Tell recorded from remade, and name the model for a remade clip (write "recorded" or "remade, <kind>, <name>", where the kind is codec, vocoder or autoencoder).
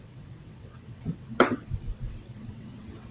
remade, vocoder, WaveNeXt